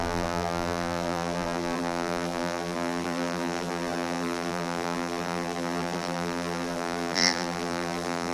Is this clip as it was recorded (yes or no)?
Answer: no